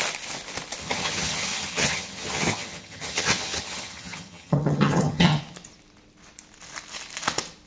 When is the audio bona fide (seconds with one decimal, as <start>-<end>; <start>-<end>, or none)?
0.0-0.8; 5.4-7.7

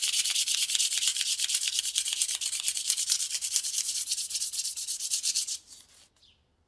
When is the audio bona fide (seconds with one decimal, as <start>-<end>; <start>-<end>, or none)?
none